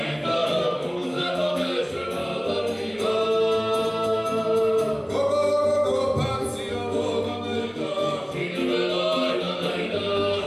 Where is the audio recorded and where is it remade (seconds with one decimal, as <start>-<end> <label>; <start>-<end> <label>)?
0.0-2.2 remade; 2.2-6.7 recorded; 6.7-8.6 remade; 8.6-9.3 recorded; 9.3-10.5 remade